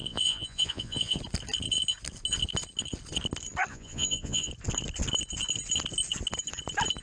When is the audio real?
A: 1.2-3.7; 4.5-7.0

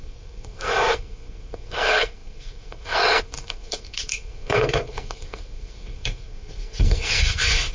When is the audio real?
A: none

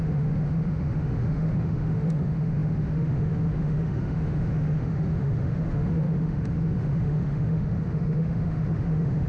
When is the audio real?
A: none

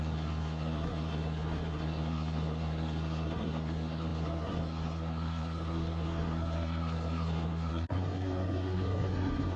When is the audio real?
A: none

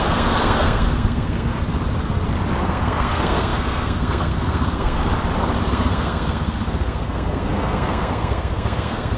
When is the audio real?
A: 1.5-2.6; 5.0-5.7

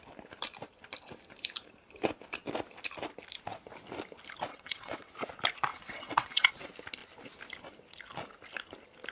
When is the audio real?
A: 0.0-4.5; 5.1-5.7; 6.5-9.1

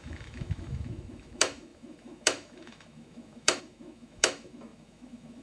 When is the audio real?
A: none